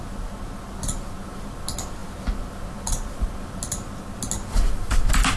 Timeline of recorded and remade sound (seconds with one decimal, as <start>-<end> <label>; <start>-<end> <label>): 0.0-5.4 recorded